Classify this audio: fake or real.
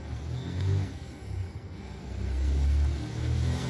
fake